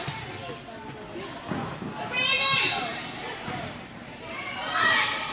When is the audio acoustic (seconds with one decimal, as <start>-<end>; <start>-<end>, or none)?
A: 0.0-2.9; 4.5-5.3